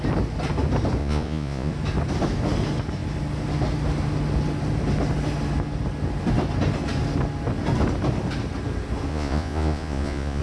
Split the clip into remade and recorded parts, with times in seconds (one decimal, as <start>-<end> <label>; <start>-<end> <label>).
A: 0.0-1.0 recorded; 1.0-1.7 remade; 1.7-9.1 recorded; 9.1-10.4 remade